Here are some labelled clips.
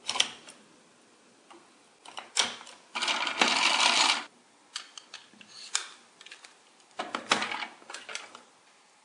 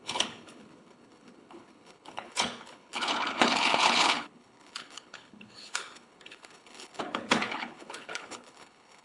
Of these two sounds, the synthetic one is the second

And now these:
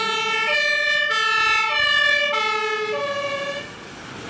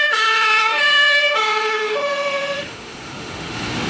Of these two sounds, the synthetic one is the second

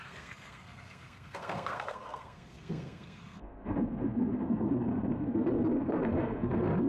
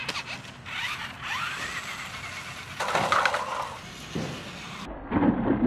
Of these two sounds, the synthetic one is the first